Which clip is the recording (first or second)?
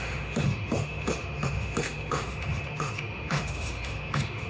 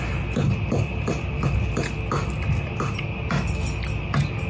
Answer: second